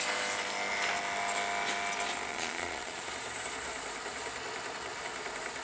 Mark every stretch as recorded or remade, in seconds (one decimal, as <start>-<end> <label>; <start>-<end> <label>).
0.0-2.3 recorded; 2.3-3.1 remade; 3.1-5.6 recorded